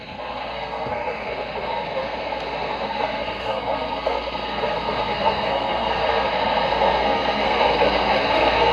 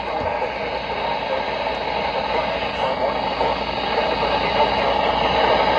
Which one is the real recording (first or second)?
second